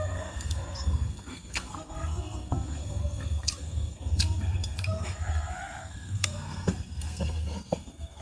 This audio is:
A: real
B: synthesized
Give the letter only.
B